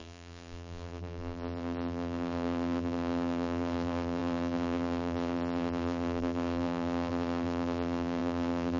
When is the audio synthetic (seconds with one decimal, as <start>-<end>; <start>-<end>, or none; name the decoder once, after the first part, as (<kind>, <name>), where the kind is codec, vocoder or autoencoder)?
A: 0.0-8.8 (vocoder, BigVGAN v2)